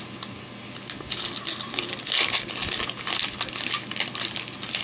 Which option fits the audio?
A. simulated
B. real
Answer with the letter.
B